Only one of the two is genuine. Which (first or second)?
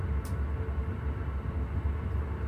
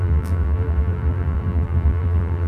first